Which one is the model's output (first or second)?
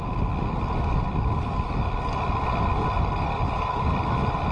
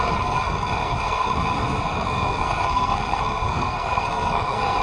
second